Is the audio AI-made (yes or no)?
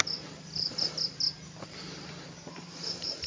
no